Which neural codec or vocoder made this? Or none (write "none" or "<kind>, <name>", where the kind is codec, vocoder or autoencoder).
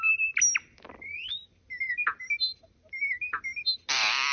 none